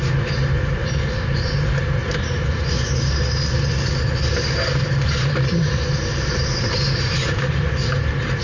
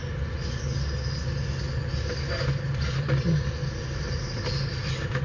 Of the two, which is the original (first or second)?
second